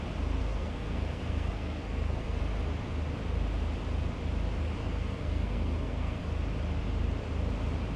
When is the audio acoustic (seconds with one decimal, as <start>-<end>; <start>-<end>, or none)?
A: 0.0-0.4; 2.4-4.8; 6.2-8.0